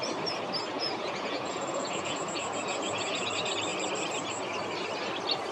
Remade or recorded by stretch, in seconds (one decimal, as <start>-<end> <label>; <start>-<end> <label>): 0.0-0.8 recorded; 0.8-3.3 remade; 3.3-5.5 recorded